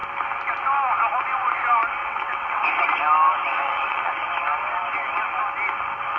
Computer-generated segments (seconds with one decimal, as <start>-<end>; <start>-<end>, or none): 2.0-2.6; 3.5-4.1